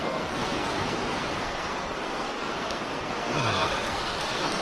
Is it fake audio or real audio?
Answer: fake